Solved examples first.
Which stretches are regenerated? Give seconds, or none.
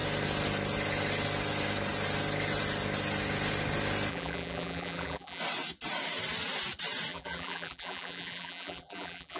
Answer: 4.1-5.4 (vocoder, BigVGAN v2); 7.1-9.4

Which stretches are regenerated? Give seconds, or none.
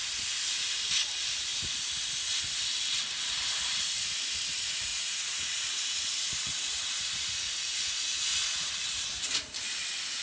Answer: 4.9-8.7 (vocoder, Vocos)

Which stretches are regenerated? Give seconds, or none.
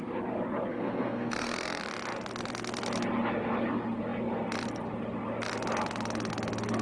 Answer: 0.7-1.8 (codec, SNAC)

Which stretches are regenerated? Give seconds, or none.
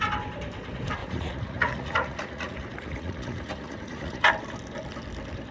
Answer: 1.0-4.3 (vocoder, Vocos)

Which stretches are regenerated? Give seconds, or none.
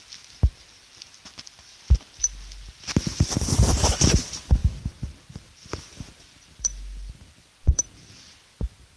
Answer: 0.0-9.0 (vocoder, BigVGAN v2)